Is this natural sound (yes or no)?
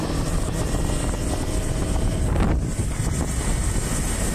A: yes